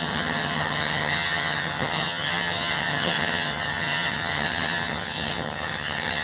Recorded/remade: remade